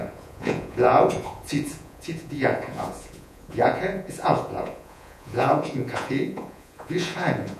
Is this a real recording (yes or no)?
no